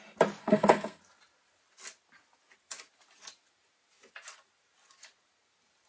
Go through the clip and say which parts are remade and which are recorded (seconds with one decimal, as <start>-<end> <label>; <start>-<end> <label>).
0.0-0.4 recorded; 0.4-1.0 remade; 1.0-5.9 recorded